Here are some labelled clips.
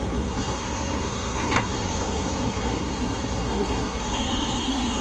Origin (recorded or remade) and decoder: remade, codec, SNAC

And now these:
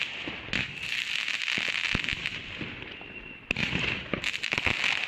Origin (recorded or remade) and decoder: recorded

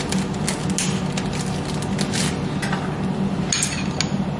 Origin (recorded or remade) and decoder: recorded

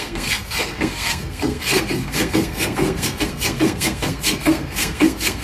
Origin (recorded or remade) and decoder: remade, codec, SNAC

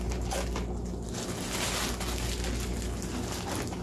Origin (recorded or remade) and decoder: recorded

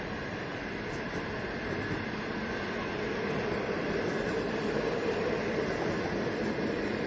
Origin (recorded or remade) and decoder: recorded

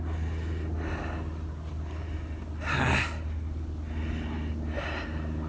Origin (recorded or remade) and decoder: recorded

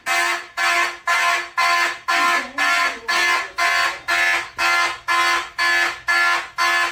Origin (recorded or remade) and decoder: recorded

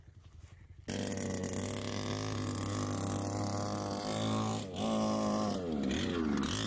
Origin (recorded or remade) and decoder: recorded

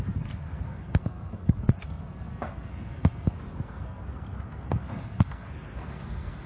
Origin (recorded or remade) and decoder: remade, codec, SNAC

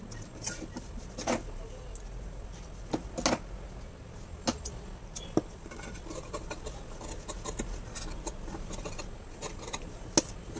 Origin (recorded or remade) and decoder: recorded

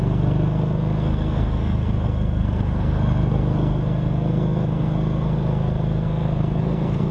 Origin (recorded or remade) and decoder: remade, codec, SNAC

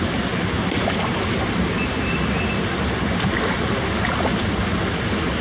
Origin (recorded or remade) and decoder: recorded